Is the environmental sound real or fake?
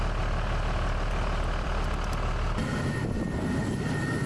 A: real